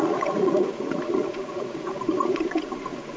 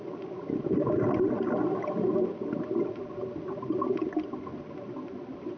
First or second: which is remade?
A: first